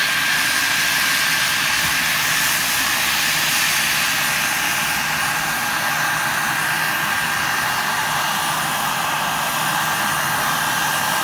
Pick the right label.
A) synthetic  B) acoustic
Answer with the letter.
B